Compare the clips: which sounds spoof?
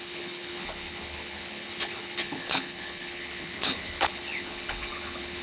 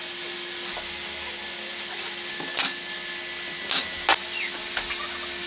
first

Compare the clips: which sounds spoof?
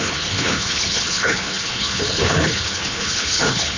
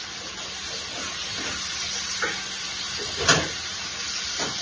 first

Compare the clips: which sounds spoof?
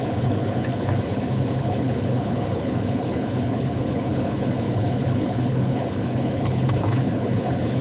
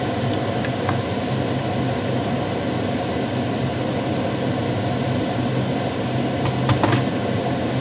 first